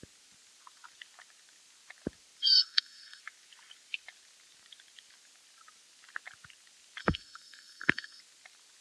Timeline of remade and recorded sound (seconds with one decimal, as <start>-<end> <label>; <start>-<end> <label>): 0.0-2.4 recorded; 2.4-3.2 remade; 3.2-7.0 recorded; 7.0-8.2 remade; 8.2-8.8 recorded